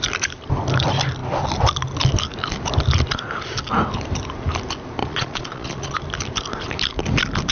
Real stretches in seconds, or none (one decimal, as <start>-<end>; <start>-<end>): 0.0-5.0; 6.0-7.5